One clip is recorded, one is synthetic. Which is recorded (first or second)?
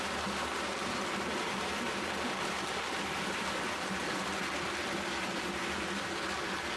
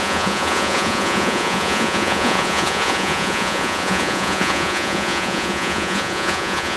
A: first